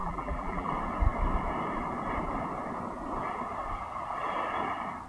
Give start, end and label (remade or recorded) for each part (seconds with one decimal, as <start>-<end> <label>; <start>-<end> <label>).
0.0-0.7 remade; 0.7-5.1 recorded